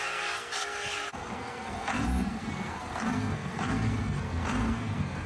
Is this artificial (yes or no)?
yes